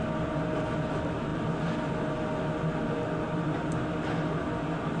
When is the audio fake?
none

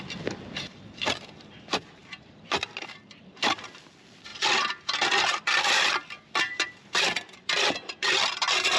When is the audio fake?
0.0-4.3 (vocoder, BigVGAN v2); 5.6-8.8

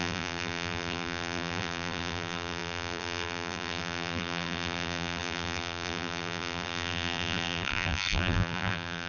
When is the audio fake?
0.0-9.1 (vocoder, BigVGAN v2)

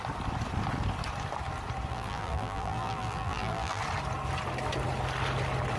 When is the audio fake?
1.9-3.8 (vocoder, BigVGAN v2)

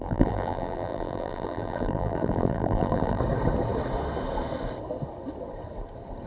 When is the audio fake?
0.0-3.2 (vocoder, BigVGAN v2)